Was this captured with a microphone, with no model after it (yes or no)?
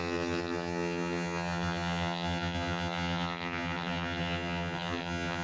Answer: no